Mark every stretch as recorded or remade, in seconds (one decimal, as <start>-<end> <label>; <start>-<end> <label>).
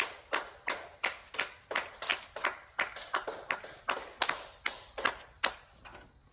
0.0-6.3 recorded